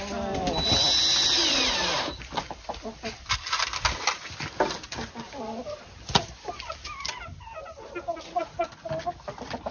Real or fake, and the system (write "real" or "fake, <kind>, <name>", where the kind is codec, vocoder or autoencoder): real